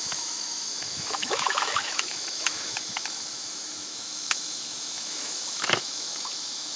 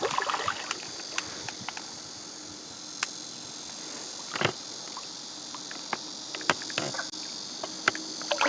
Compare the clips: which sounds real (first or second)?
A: second